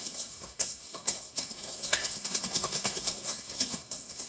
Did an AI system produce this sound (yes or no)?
yes